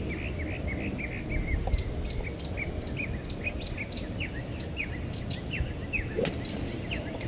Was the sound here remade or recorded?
recorded